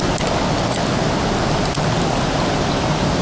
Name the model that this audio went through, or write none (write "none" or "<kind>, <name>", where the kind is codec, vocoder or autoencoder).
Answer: none